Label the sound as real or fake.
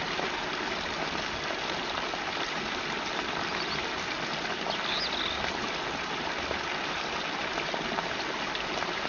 real